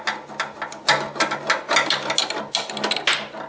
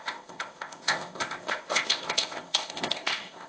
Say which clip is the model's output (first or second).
second